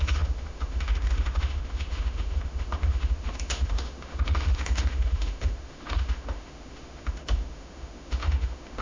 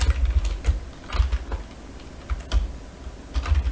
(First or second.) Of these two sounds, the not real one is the first